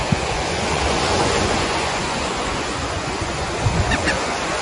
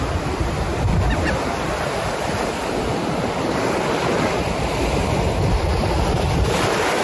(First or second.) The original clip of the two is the second